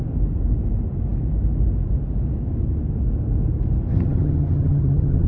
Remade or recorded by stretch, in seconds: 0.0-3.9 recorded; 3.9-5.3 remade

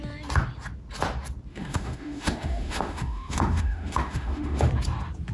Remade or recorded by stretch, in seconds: 0.0-1.5 recorded; 1.5-4.7 remade; 4.7-5.3 recorded

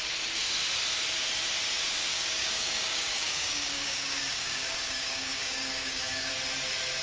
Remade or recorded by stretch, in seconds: 0.0-2.1 recorded; 2.1-6.3 remade; 6.3-7.0 recorded

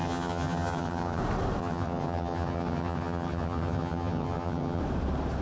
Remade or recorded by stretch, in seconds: 0.0-1.2 remade; 1.2-1.6 recorded; 1.6-4.8 remade; 4.8-5.4 recorded

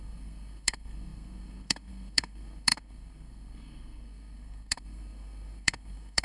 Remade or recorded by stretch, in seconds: 0.0-6.2 remade

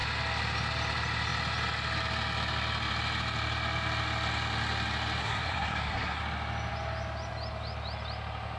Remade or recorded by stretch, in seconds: 0.0-5.2 recorded; 5.2-6.2 remade; 6.2-8.6 recorded